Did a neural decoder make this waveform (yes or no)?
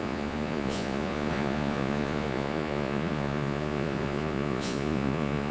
yes